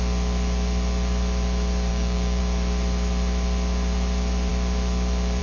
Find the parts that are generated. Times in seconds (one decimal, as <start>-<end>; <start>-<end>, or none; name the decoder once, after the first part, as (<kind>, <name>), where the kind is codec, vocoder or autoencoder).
1.9-2.4 (codec, DAC)